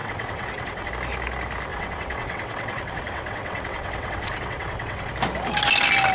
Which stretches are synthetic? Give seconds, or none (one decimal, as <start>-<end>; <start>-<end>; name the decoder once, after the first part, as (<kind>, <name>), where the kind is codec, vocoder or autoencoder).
0.0-0.9 (vocoder, WaveNeXt); 1.7-5.1